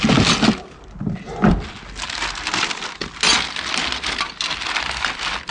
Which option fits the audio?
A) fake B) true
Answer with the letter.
B